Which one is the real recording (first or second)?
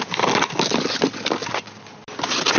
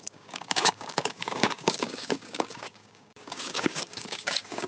first